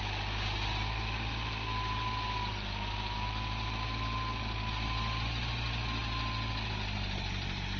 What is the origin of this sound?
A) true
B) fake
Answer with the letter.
A